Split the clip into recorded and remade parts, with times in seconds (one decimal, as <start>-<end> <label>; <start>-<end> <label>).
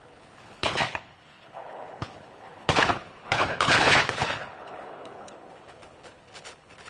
0.0-6.9 remade